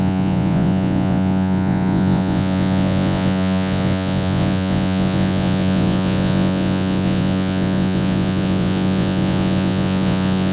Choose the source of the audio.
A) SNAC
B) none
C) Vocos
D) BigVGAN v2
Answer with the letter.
C